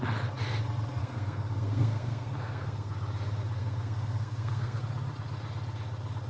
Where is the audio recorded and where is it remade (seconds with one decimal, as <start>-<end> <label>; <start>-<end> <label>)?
0.0-1.0 recorded; 1.0-2.9 remade; 2.9-3.6 recorded; 3.6-4.8 remade; 4.8-6.3 recorded